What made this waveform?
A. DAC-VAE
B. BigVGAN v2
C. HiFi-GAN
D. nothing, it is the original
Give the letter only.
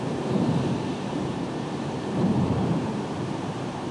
B